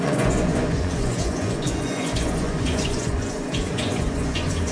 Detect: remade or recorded remade